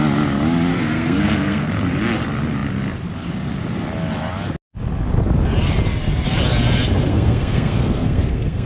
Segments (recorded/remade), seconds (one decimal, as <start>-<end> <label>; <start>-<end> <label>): 0.0-0.7 recorded; 0.7-1.7 remade; 1.7-7.1 recorded; 7.1-8.7 remade